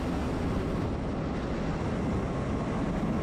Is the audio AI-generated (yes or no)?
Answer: no